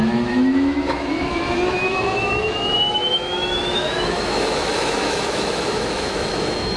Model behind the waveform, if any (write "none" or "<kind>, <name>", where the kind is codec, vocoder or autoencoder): autoencoder, DAC-VAE